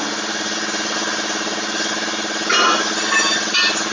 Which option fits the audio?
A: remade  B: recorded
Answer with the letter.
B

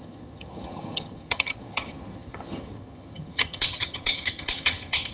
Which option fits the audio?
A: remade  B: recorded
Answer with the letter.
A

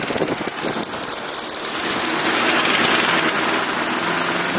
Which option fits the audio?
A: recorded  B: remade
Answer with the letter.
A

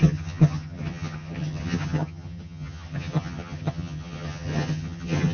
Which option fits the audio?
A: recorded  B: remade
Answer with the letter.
B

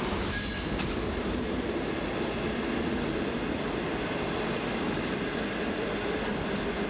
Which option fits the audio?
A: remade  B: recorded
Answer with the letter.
B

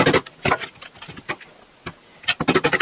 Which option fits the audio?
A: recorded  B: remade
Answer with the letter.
A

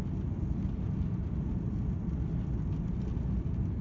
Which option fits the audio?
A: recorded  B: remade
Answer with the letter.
A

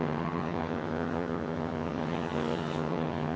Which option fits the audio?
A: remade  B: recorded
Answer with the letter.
A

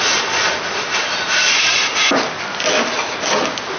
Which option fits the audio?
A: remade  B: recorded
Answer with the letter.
B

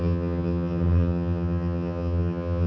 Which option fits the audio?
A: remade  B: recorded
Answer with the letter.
A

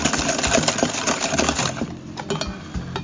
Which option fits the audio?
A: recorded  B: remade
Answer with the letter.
A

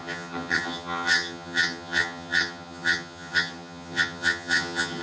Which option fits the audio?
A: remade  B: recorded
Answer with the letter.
A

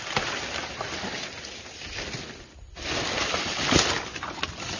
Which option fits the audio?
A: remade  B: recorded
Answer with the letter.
B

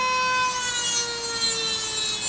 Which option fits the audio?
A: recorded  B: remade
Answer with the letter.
A